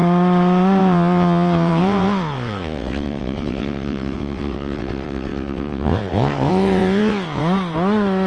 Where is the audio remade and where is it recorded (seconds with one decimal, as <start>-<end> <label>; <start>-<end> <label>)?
0.0-0.8 recorded; 0.8-7.4 remade; 7.4-8.3 recorded